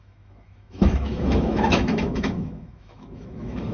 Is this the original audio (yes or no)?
no